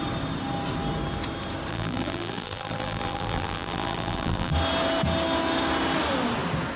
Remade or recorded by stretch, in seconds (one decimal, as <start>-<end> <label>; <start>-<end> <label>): 0.0-1.7 recorded; 1.7-4.5 remade; 4.5-6.8 recorded